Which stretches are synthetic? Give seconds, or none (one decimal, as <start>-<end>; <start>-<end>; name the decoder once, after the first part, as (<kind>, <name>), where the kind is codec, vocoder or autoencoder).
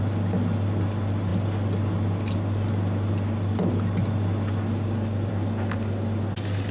none